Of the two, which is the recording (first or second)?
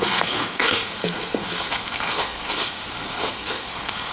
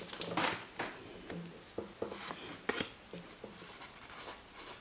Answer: second